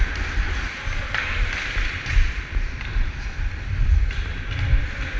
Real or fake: real